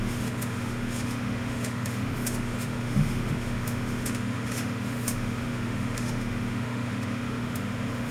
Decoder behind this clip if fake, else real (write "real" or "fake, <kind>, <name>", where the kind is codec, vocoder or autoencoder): fake, autoencoder, DAC-VAE